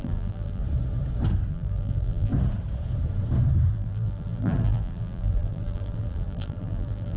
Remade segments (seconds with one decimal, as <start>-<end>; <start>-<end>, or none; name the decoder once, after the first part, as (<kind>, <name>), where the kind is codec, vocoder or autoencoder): 0.0-0.6 (vocoder, BigVGAN v2); 1.5-2.3; 3.7-7.2

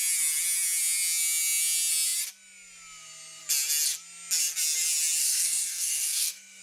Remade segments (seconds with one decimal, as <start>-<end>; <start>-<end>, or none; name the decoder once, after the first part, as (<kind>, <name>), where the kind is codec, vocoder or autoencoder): 5.2-6.6 (codec, SNAC)

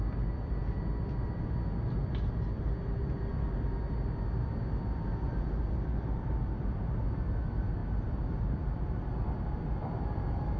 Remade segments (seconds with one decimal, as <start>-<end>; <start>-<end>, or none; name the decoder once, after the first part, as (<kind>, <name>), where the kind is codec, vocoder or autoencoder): none

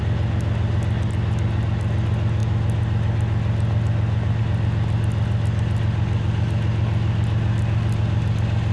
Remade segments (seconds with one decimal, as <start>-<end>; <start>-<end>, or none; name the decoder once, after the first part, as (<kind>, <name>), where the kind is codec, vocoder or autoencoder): none